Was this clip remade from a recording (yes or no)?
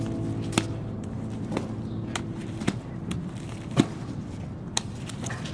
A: yes